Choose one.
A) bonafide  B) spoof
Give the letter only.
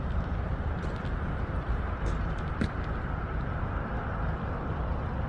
B